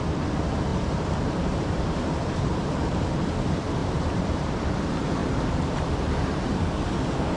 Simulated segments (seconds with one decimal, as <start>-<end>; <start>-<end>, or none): 0.7-3.1; 3.8-4.6; 5.2-6.6